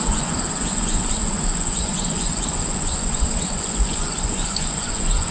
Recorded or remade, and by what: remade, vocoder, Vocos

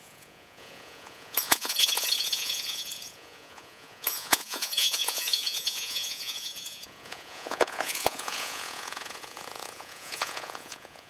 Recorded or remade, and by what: remade, vocoder, Vocos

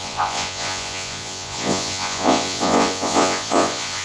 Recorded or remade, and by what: remade, vocoder, Vocos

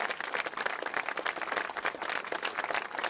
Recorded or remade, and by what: recorded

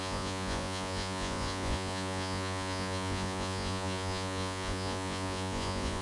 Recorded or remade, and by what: remade, vocoder, Vocos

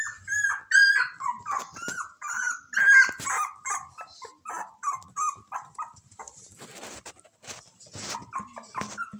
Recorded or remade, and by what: recorded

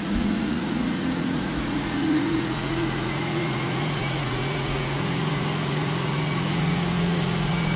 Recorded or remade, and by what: remade, vocoder, Vocos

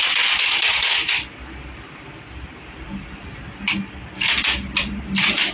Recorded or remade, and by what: recorded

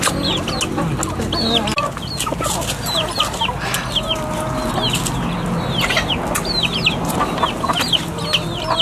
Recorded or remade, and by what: recorded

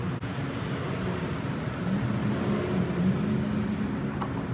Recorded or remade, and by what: recorded